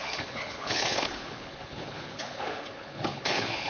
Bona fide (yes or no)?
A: no